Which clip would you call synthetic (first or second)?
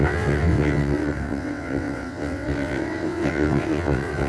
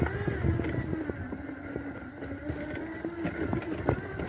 first